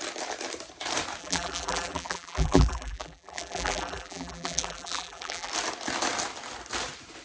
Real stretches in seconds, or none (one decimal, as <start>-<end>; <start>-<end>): 0.0-1.2; 5.5-7.2